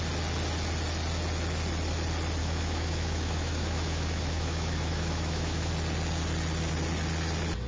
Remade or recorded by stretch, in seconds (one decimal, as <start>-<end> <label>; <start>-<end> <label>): 0.0-2.4 recorded; 2.4-5.7 remade; 5.7-7.7 recorded